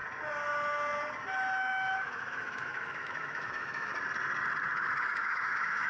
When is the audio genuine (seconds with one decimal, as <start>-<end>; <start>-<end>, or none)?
0.0-1.6; 3.9-5.0

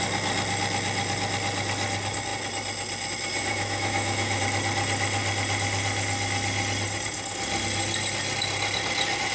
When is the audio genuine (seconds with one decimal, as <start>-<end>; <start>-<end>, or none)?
0.0-3.5; 4.4-9.3

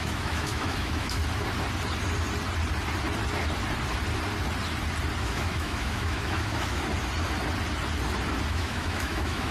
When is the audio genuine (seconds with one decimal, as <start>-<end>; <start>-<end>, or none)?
1.2-5.2; 6.9-8.5

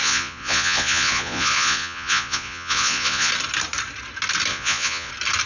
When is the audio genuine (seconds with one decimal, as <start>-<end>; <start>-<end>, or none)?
3.3-4.5; 5.1-5.5

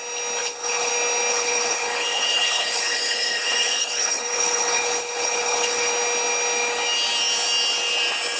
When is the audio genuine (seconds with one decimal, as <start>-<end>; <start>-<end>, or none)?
0.0-0.4; 0.9-1.3; 5.9-8.4

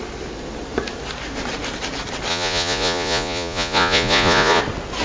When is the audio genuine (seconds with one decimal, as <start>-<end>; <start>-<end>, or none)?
0.0-2.3; 4.6-5.0